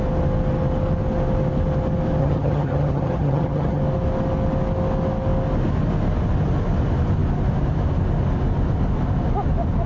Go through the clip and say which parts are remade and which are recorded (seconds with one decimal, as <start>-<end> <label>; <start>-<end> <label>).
0.0-2.2 recorded; 2.2-3.8 remade; 3.8-9.9 recorded